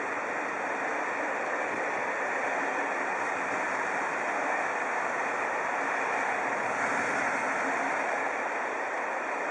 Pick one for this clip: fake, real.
real